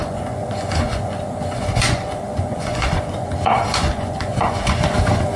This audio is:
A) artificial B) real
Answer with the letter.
A